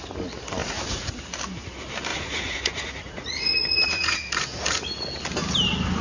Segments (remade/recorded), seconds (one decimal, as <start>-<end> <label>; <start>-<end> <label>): 0.0-0.6 recorded; 0.6-1.1 remade; 1.1-2.1 recorded; 2.1-4.3 remade; 4.3-6.0 recorded